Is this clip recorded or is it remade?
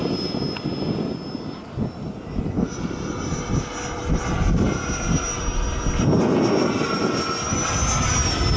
recorded